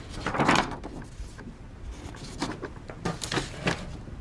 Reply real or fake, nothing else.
real